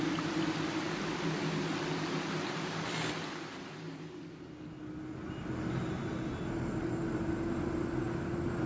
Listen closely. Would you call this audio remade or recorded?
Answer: recorded